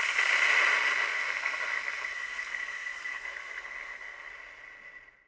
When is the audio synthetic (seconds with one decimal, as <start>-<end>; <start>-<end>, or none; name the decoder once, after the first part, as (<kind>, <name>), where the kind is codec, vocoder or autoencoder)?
1.1-4.3 (codec, SNAC)